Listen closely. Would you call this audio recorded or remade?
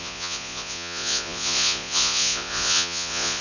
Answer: remade